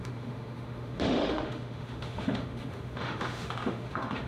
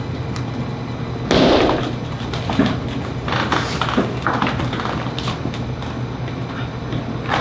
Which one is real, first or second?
second